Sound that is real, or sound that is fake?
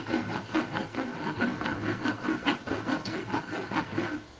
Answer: fake